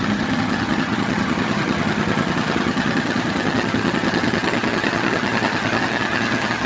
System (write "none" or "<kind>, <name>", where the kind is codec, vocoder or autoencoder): vocoder, HiFi-GAN